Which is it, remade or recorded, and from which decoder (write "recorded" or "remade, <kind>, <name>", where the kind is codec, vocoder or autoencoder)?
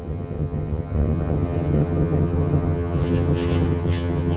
remade, vocoder, HiFi-GAN